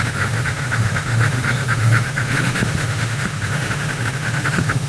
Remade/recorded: remade